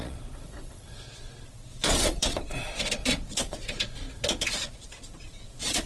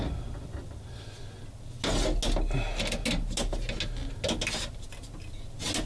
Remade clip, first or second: first